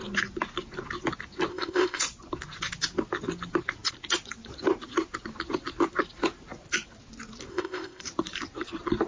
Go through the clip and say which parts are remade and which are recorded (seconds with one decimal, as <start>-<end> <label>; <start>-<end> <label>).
0.0-1.5 recorded; 1.5-2.0 remade; 2.0-7.5 recorded; 7.5-8.0 remade; 8.0-9.1 recorded